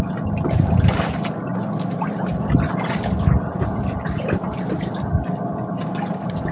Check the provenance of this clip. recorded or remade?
recorded